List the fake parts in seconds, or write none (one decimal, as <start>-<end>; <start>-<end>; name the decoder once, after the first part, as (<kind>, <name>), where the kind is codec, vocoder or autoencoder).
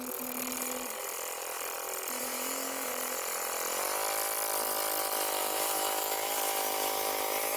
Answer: 2.2-2.9 (autoencoder, DAC-VAE); 5.4-7.6